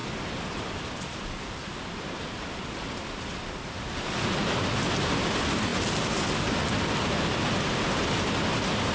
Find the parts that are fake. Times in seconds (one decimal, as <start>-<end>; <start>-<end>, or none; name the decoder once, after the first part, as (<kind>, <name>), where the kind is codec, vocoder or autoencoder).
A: 0.0-1.3 (vocoder, BigVGAN v2)